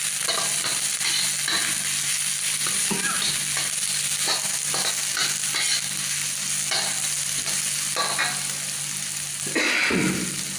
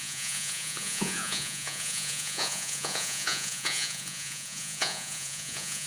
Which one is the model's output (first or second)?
second